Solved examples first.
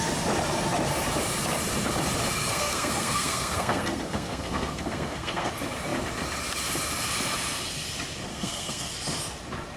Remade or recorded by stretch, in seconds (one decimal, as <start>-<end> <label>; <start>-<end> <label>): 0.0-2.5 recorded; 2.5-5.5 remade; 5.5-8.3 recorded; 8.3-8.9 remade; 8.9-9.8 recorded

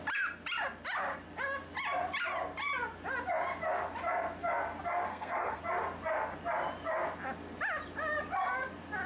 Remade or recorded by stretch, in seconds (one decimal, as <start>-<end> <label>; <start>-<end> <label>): 0.0-5.1 recorded; 5.1-5.6 remade; 5.6-9.1 recorded

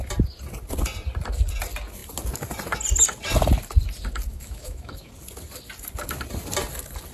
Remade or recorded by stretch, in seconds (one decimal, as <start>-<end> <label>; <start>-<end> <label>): 0.0-4.3 recorded; 4.3-5.1 remade; 5.1-7.1 recorded

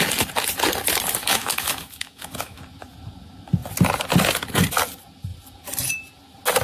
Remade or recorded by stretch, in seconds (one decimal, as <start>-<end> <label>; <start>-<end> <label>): 0.0-1.2 recorded; 1.2-2.6 remade; 2.6-6.6 recorded

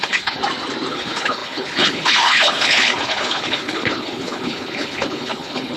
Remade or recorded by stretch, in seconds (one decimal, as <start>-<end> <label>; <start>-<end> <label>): 0.0-0.4 remade; 0.4-0.9 recorded; 0.9-5.8 remade

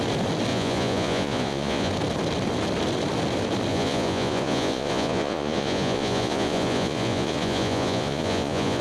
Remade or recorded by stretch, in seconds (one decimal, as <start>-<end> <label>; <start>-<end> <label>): 0.0-0.5 recorded; 0.5-1.9 remade; 1.9-3.7 recorded; 3.7-8.8 remade

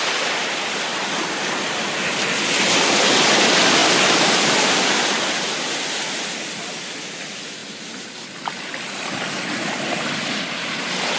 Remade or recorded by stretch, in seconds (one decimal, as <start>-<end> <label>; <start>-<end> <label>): 0.0-11.2 recorded